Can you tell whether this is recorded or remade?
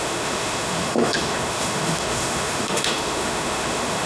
remade